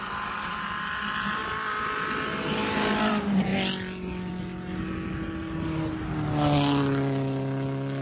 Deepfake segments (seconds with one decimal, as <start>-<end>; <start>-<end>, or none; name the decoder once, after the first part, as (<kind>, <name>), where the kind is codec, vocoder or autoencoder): none